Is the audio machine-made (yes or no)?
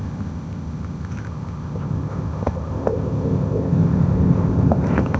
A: yes